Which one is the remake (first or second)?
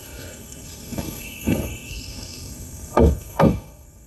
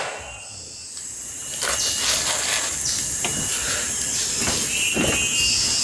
first